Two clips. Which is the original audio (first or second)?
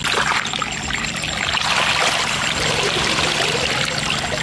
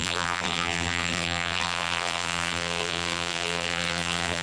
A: first